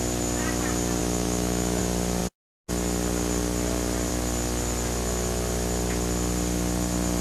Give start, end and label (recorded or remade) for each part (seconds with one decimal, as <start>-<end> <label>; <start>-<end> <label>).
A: 0.0-1.0 recorded; 1.0-1.8 remade; 1.8-7.2 recorded